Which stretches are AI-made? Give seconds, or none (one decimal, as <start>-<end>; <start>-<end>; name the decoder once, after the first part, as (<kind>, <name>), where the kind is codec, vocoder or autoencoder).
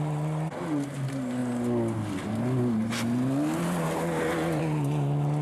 none